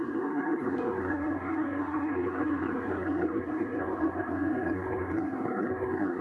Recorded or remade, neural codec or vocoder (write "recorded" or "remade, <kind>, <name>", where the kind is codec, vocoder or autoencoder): remade, codec, SNAC